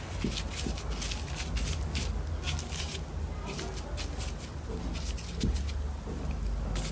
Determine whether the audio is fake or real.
real